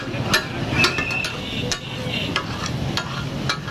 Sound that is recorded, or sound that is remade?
recorded